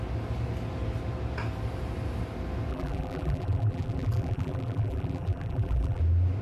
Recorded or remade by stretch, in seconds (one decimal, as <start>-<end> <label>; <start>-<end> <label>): 0.0-2.7 recorded; 2.7-6.0 remade; 6.0-6.4 recorded